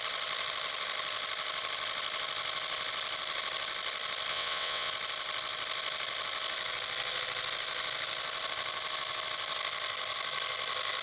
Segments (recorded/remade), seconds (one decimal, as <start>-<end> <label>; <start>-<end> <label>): 0.0-4.3 recorded; 4.3-4.9 remade; 4.9-11.0 recorded